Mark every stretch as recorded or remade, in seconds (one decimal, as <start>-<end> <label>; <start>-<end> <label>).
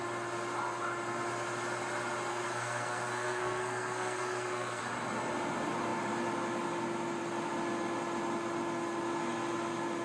0.0-2.3 recorded; 2.3-4.8 remade; 4.8-10.0 recorded